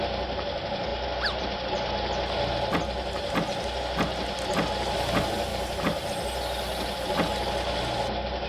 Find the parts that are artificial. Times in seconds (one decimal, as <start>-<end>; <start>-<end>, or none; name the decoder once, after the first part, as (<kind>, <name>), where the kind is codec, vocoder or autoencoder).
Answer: 5.5-6.1 (vocoder, BigVGAN v2)

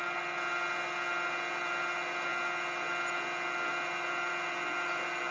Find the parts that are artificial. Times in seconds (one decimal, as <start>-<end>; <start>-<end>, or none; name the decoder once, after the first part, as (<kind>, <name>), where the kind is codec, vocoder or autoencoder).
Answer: none